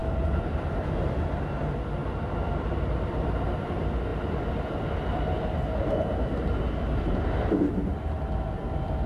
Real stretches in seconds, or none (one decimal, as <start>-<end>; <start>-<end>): 0.0-2.0; 3.2-4.1; 4.7-9.1